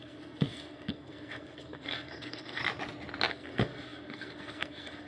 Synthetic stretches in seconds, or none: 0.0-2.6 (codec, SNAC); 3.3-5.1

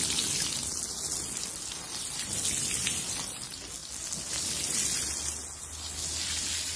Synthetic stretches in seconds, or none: none

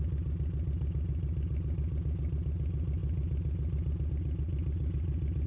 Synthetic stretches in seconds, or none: none

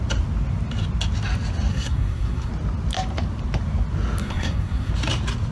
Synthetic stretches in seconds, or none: 1.7-2.5 (codec, SNAC); 4.2-4.9

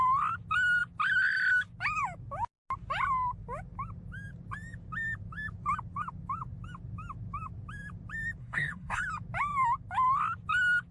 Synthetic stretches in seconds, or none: 8.4-9.0 (codec, SNAC)

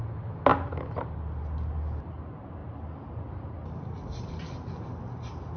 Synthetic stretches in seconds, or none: none

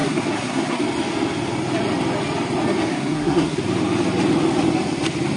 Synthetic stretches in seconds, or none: 0.0-0.8 (codec, SNAC); 2.9-3.6

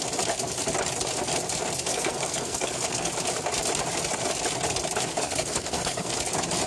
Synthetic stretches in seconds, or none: 1.9-3.1 (codec, SNAC); 5.1-6.1